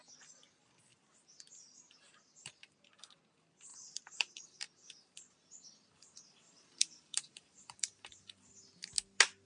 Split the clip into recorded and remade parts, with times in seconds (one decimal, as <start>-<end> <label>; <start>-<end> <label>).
0.0-3.7 recorded; 3.7-8.4 remade; 8.4-9.5 recorded